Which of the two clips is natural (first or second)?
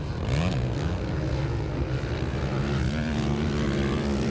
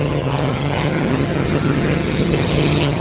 first